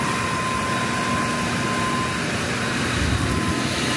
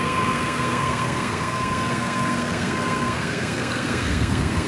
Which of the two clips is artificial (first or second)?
second